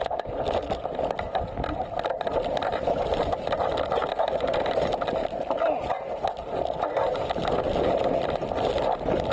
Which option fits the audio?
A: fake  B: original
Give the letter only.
B